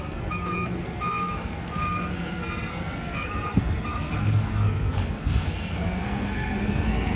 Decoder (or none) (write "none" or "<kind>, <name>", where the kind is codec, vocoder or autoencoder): codec, SNAC